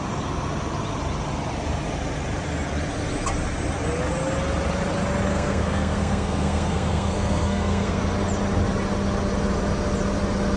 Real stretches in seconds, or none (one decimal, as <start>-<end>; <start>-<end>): 0.0-5.3; 8.0-10.6